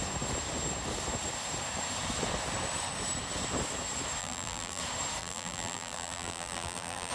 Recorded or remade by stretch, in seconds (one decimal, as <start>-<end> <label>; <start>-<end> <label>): 0.0-4.2 recorded; 4.2-4.8 remade; 4.8-5.2 recorded; 5.2-7.1 remade